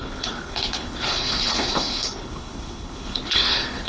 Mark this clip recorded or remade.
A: remade